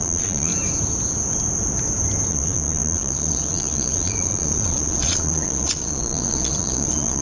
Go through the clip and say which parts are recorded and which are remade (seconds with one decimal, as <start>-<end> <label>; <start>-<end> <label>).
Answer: 0.0-0.5 remade; 0.5-2.3 recorded; 2.3-7.2 remade